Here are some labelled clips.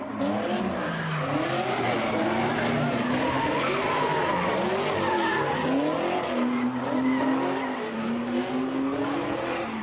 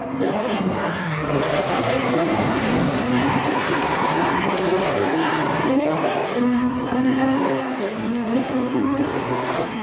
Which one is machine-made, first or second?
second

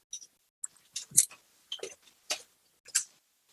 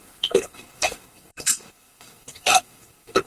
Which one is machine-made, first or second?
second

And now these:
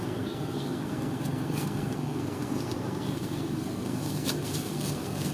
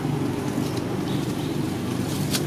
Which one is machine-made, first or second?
first